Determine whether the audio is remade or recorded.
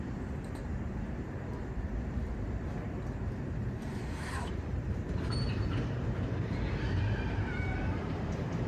remade